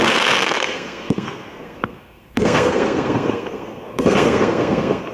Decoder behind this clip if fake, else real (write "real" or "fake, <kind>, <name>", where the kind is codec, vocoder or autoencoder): fake, codec, SNAC